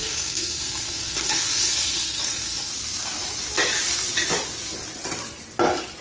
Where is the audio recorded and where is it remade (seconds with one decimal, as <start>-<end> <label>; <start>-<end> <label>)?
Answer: 0.0-2.7 remade; 2.7-6.0 recorded

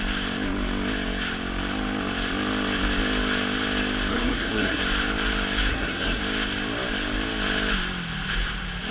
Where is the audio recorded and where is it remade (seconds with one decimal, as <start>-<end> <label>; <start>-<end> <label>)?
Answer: 0.0-4.1 recorded; 4.1-4.8 remade; 4.8-5.7 recorded; 5.7-6.2 remade; 6.2-8.9 recorded

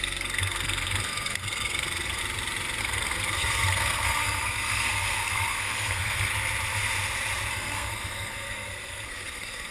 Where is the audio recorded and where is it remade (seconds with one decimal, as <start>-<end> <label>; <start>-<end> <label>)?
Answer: 0.0-2.2 remade; 2.2-2.8 recorded; 2.8-6.3 remade; 6.3-7.5 recorded; 7.5-9.7 remade